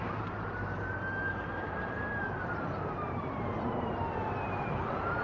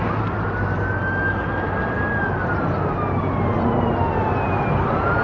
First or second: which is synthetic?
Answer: first